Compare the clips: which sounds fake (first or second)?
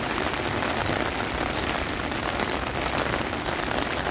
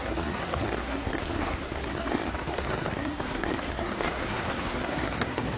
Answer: second